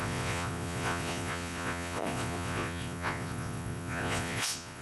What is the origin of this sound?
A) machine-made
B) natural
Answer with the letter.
A